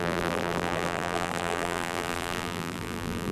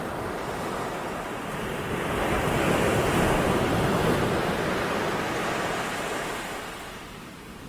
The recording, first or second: second